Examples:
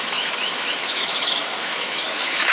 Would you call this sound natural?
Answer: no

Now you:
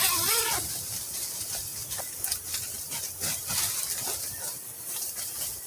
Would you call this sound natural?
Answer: yes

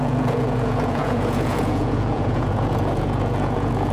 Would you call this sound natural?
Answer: no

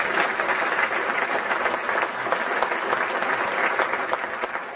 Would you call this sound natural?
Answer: yes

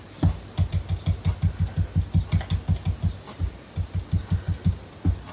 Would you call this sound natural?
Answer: yes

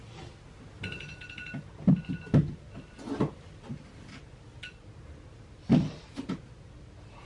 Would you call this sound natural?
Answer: yes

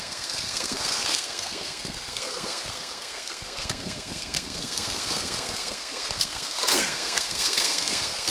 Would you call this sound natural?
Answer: no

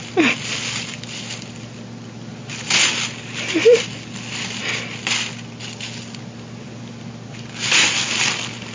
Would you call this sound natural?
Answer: yes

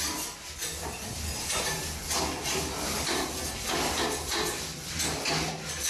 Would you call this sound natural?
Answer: yes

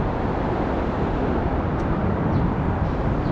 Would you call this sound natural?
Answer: no